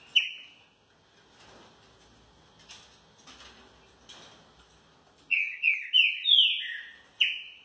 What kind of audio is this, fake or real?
real